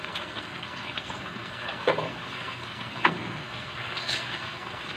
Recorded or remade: remade